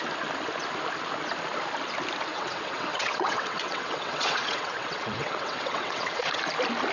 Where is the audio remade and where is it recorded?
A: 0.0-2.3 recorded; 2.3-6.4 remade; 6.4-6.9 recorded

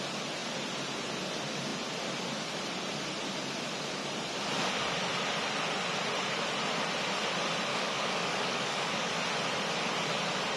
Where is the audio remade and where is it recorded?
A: 0.0-7.7 recorded; 7.7-9.1 remade; 9.1-10.6 recorded

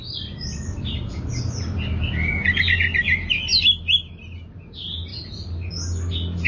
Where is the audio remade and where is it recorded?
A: 0.0-1.3 remade; 1.3-3.5 recorded; 3.5-4.1 remade; 4.1-5.1 recorded; 5.1-5.7 remade; 5.7-6.5 recorded

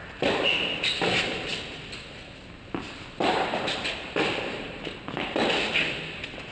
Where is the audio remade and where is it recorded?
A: 0.0-4.3 recorded; 4.3-4.8 remade; 4.8-6.5 recorded

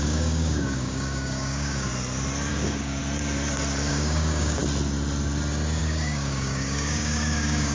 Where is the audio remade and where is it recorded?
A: 0.0-1.9 remade; 1.9-2.5 recorded; 2.5-3.0 remade; 3.0-3.9 recorded; 3.9-4.6 remade; 4.6-5.8 recorded; 5.8-7.7 remade